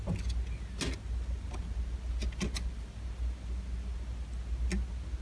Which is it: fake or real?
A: real